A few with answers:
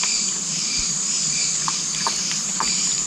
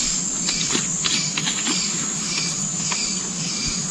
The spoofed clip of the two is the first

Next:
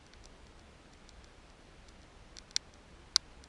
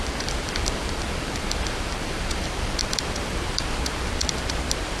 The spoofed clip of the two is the second